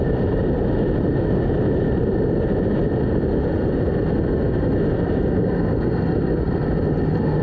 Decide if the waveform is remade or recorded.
recorded